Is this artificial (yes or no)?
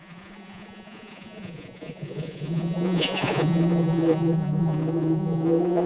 yes